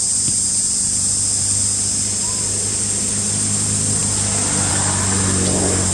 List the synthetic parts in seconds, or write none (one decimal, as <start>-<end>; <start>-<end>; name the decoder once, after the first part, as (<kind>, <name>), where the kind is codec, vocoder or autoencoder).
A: none